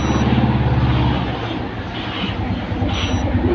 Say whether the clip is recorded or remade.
recorded